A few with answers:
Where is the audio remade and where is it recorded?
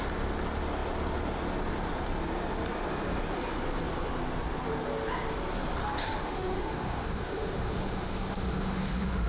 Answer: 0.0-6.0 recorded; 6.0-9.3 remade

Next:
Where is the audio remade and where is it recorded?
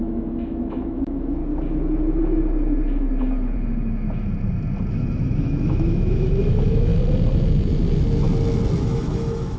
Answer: 0.0-1.4 remade; 1.4-4.9 recorded; 4.9-6.9 remade; 6.9-8.8 recorded; 8.8-9.6 remade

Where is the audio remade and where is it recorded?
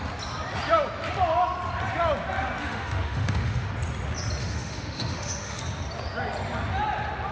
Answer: 0.0-2.6 recorded; 2.6-3.7 remade; 3.7-4.4 recorded; 4.4-5.6 remade; 5.6-7.3 recorded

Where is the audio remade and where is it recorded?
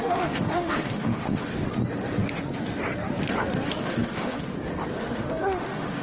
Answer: 0.0-1.5 remade; 1.5-3.8 recorded; 3.8-4.5 remade; 4.5-5.0 recorded; 5.0-6.0 remade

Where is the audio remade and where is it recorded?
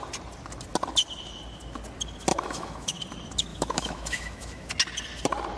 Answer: 0.0-2.3 recorded; 2.3-3.0 remade; 3.0-3.5 recorded; 3.5-4.7 remade; 4.7-5.6 recorded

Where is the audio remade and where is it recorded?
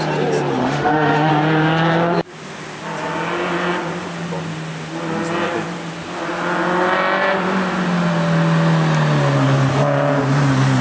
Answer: 0.0-0.6 recorded; 0.6-1.3 remade; 1.3-10.8 recorded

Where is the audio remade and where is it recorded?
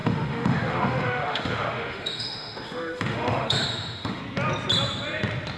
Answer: 0.0-4.2 remade; 4.2-5.6 recorded